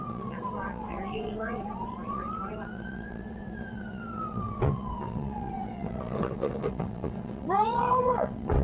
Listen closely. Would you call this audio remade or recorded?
remade